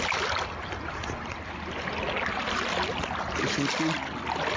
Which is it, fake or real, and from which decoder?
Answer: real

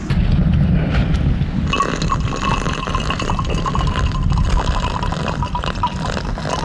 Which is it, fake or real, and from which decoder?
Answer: real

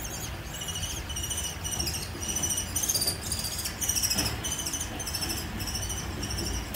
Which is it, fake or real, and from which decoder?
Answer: real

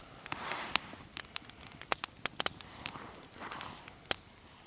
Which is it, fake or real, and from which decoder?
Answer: real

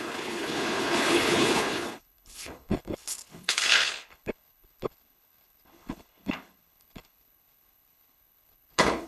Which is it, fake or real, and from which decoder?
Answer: fake, codec, HILCodec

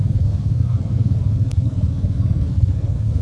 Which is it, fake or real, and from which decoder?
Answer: fake, codec, SNAC